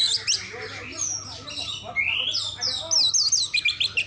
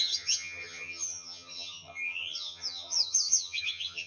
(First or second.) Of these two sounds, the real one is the first